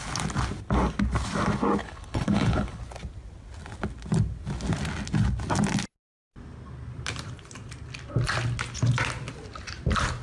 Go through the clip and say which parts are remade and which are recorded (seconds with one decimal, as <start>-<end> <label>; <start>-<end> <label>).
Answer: 0.0-1.8 recorded; 1.8-2.8 remade; 2.8-10.2 recorded